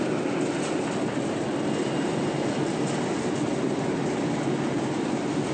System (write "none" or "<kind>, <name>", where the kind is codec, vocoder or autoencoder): none